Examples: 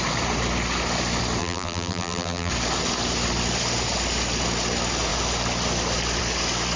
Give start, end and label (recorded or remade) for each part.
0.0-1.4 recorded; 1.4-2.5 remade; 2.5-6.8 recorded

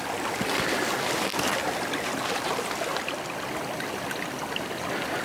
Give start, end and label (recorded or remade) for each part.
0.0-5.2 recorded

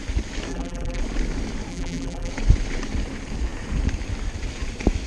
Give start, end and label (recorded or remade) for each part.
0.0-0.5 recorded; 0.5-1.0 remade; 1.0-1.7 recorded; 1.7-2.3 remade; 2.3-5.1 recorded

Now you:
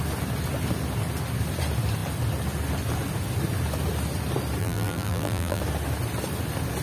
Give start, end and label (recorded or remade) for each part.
0.0-4.6 recorded; 4.6-5.6 remade; 5.6-6.8 recorded